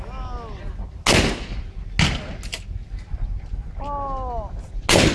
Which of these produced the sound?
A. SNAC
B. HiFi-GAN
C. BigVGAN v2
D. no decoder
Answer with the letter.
D